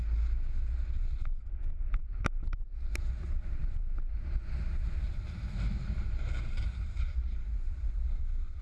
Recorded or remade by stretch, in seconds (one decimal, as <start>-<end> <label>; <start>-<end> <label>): 0.0-1.0 recorded; 1.0-8.6 remade